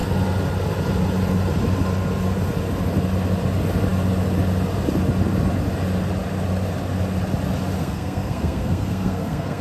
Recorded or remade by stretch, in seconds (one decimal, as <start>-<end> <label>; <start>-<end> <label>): 0.0-7.8 recorded; 7.8-9.6 remade